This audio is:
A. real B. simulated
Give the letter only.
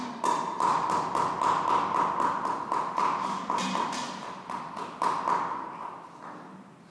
A